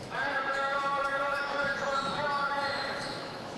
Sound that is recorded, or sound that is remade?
remade